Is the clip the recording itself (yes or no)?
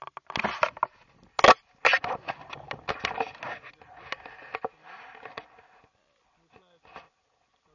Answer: yes